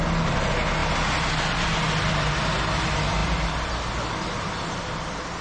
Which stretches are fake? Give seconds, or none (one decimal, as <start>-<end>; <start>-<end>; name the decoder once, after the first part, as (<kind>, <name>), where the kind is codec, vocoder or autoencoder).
none